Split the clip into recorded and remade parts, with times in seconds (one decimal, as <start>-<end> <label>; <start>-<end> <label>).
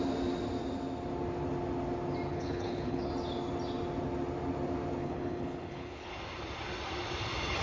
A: 0.0-2.3 recorded; 2.3-3.1 remade; 3.1-5.0 recorded; 5.0-6.1 remade; 6.1-7.6 recorded